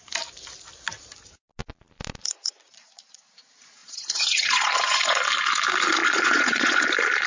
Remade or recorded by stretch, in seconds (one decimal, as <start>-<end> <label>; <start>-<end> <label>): 0.0-2.2 recorded; 2.2-3.2 remade; 3.2-3.8 recorded; 3.8-5.2 remade; 5.2-6.0 recorded; 6.0-6.8 remade; 6.8-7.3 recorded